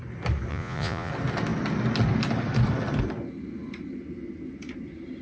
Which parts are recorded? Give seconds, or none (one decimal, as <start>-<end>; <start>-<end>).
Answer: 0.0-0.5; 1.1-5.2